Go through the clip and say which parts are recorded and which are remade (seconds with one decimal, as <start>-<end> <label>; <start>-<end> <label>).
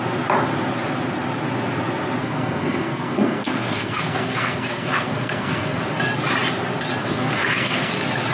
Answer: 0.0-2.2 recorded; 2.2-5.8 remade; 5.8-7.0 recorded; 7.0-7.9 remade; 7.9-8.3 recorded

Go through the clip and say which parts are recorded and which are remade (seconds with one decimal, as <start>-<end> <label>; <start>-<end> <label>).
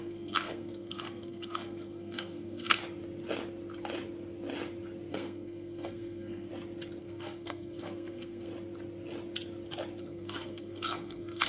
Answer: 0.0-2.8 remade; 2.8-5.1 recorded; 5.1-6.5 remade; 6.5-7.0 recorded; 7.0-8.5 remade; 8.5-10.0 recorded; 10.0-11.5 remade